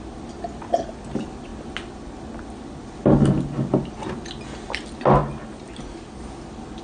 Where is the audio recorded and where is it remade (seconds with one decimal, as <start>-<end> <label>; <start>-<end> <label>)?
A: 0.0-6.8 recorded